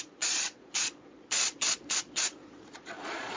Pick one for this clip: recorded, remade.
remade